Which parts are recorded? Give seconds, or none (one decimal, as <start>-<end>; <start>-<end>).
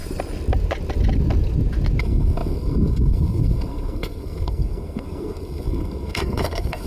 0.0-2.0